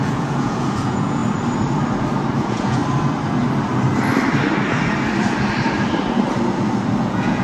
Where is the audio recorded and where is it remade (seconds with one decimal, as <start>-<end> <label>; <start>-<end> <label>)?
0.0-1.2 remade; 1.2-2.4 recorded; 2.4-2.8 remade; 2.8-7.0 recorded; 7.0-7.4 remade